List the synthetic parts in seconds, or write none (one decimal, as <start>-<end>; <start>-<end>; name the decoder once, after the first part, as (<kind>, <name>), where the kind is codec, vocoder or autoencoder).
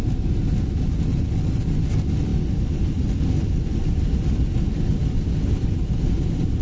2.3-6.6 (vocoder, BigVGAN v2)